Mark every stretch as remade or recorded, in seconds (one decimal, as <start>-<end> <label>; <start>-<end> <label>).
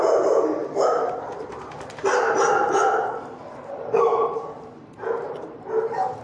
0.0-6.2 remade